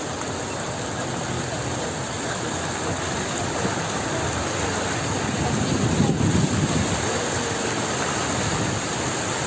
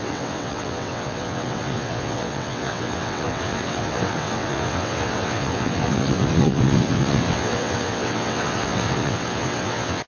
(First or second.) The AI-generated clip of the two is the second